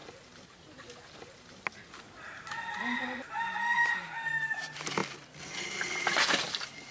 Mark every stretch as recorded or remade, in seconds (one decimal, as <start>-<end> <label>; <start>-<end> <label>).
0.0-2.8 recorded; 2.8-6.9 remade